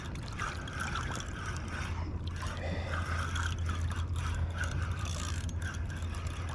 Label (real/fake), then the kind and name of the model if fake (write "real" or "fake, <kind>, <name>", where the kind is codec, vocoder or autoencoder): real